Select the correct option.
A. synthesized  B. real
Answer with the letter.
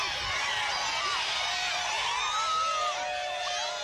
B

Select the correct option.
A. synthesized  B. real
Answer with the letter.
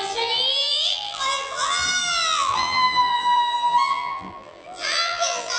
A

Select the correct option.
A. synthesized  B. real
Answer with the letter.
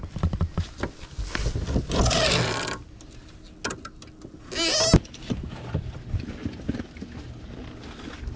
B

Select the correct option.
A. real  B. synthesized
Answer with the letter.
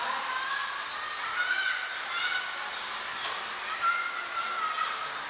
A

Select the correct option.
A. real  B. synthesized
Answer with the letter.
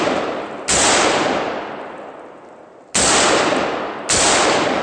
A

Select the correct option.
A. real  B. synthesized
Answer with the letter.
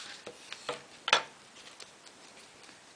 A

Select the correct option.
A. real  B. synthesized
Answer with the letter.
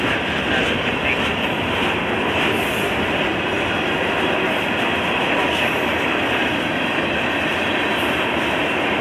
A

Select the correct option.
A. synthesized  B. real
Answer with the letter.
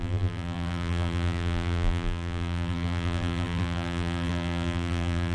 A